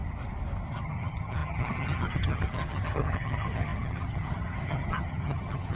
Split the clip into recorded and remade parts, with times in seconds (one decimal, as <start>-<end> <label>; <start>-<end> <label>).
0.0-0.7 recorded; 0.7-5.8 remade